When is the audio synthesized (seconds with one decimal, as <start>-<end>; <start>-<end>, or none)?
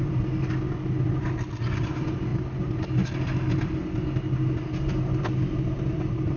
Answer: none